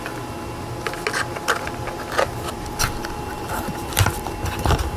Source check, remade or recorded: recorded